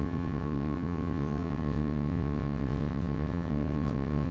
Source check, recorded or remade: remade